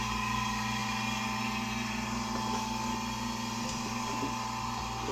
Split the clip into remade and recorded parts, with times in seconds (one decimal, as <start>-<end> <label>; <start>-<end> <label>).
0.0-5.1 recorded